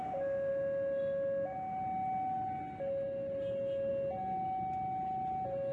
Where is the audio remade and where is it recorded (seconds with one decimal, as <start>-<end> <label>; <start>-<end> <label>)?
0.0-5.7 recorded